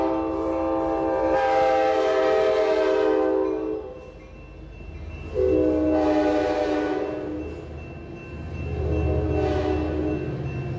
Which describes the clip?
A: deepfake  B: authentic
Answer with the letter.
B